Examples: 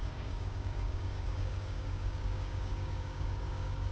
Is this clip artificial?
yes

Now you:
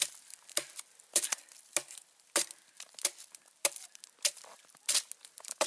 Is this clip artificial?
no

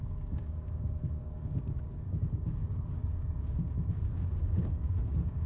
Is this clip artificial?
yes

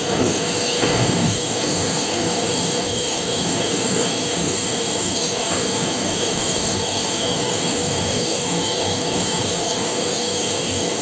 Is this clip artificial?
yes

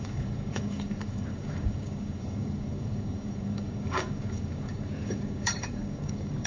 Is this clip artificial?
yes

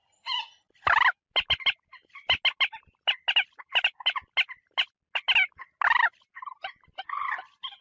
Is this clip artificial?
no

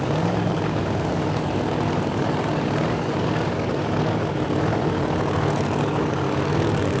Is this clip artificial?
yes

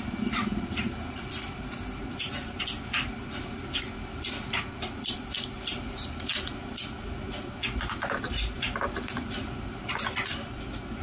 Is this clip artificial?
no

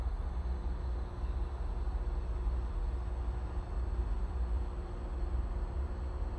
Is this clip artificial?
no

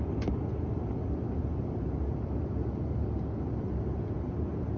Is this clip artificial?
no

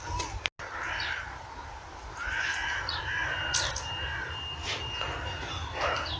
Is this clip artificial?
no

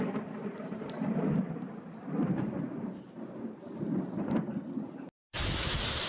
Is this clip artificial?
no